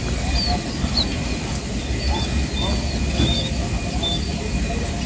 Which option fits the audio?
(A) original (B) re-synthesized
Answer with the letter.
A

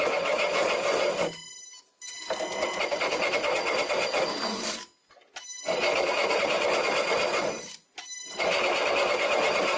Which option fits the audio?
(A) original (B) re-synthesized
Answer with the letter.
A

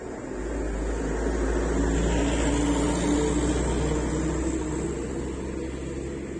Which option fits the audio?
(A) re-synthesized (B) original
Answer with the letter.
B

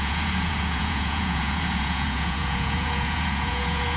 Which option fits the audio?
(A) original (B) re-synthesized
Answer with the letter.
B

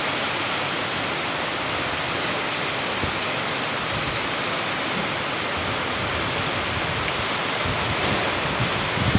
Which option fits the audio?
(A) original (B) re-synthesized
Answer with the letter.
A